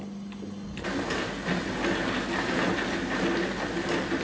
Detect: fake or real real